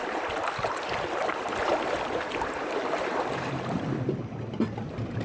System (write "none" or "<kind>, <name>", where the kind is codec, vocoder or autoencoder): vocoder, BigVGAN v2